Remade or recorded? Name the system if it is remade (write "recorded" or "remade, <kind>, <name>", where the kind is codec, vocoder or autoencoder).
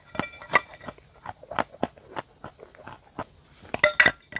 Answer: recorded